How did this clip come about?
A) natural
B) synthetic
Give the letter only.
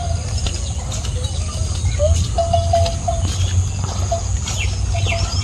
A